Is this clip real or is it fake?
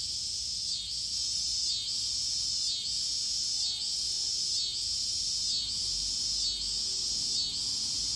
real